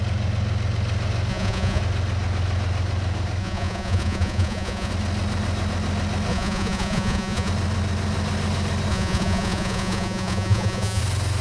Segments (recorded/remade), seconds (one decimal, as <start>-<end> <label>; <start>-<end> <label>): 0.0-1.3 recorded; 1.3-1.8 remade; 1.8-3.4 recorded; 3.4-4.9 remade; 4.9-6.3 recorded; 6.3-7.5 remade; 7.5-8.9 recorded; 8.9-11.0 remade; 11.0-11.4 recorded